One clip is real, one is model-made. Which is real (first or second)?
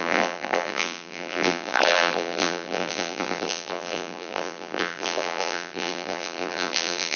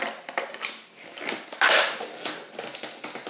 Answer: second